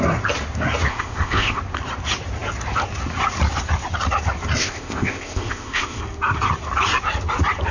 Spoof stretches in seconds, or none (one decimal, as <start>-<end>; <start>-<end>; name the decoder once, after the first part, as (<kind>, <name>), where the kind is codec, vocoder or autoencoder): 0.9-1.6 (codec, ZipCodec); 4.6-6.0